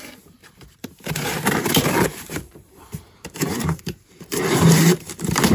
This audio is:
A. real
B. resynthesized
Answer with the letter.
B